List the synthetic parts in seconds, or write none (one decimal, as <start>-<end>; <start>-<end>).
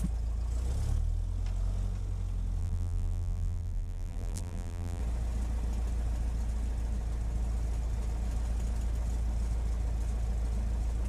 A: 2.6-5.0